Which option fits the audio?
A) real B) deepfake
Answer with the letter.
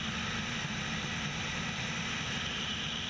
A